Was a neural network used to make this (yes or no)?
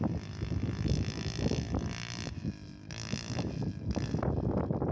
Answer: no